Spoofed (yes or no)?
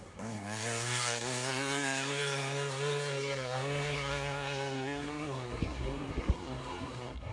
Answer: yes